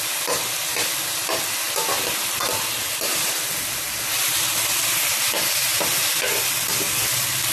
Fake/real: real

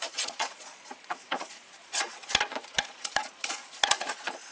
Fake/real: fake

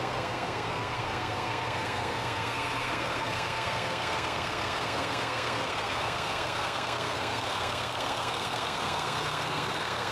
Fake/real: fake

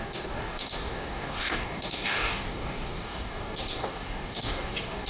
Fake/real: fake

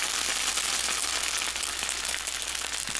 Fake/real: real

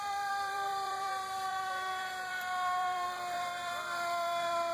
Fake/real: fake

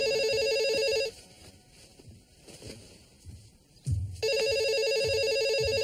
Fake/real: real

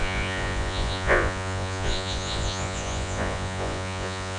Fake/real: fake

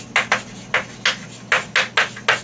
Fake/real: real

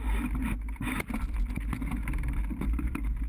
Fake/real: real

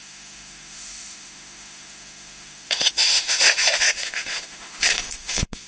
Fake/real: fake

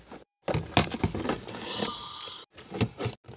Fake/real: real